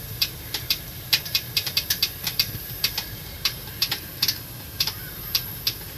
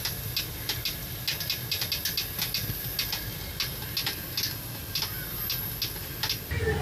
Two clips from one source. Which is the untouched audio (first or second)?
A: second